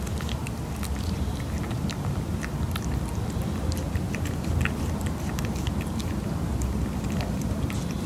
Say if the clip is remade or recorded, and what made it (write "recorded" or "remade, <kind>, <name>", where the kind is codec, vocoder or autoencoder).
recorded